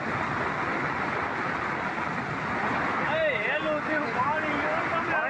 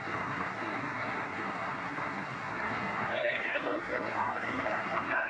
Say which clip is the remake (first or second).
second